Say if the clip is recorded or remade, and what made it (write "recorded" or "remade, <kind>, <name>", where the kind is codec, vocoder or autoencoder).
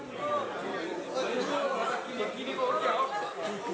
recorded